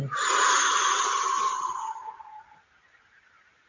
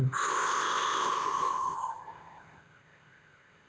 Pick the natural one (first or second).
first